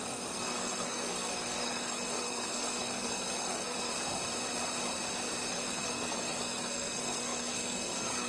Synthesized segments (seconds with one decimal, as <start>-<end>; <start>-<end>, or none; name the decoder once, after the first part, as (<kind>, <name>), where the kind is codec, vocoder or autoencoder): 0.0-3.9 (codec, SNAC); 5.5-8.3